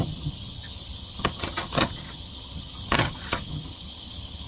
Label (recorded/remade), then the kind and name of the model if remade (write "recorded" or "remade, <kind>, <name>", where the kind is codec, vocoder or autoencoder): remade, vocoder, HiFi-GAN